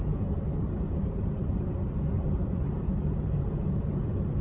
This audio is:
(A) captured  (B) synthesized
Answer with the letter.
B